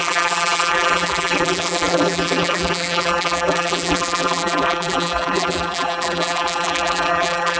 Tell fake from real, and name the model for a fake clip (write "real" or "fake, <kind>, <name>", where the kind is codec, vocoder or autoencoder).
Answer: fake, vocoder, BigVGAN v2